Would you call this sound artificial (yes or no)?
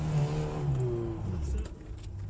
no